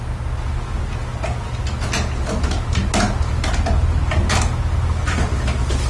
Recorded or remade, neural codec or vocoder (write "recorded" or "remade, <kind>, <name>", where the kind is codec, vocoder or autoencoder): recorded